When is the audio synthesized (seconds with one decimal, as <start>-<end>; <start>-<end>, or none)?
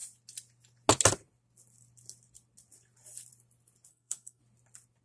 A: 3.9-4.4